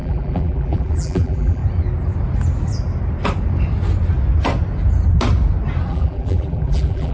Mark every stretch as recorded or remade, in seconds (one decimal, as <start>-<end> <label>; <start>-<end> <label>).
0.0-1.6 remade; 1.6-5.9 recorded; 5.9-7.1 remade